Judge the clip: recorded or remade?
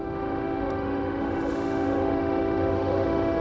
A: remade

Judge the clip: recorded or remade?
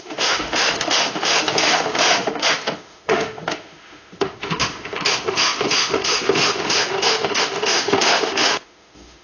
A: remade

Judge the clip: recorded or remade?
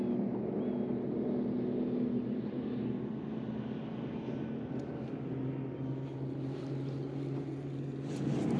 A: recorded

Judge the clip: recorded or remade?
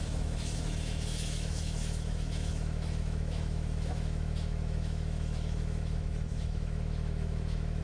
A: remade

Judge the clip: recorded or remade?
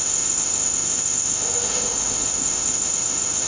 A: remade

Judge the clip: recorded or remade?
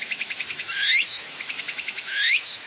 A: remade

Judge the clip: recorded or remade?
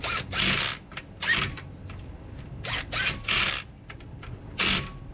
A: recorded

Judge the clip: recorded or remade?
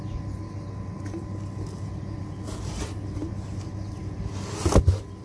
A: recorded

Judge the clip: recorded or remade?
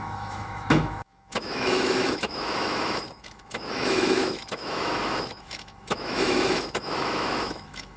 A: remade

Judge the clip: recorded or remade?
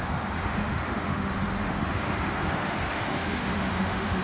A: remade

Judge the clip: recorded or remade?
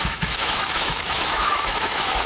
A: remade